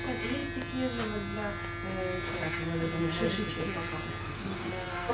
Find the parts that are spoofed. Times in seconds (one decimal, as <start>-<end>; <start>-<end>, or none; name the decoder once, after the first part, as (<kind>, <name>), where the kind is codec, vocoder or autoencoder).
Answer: 4.2-5.1 (codec, SNAC)